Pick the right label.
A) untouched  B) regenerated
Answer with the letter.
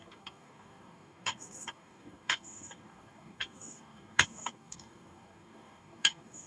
B